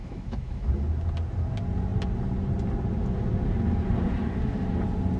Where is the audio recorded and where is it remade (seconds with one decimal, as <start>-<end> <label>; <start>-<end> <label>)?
0.0-0.7 remade; 0.7-5.2 recorded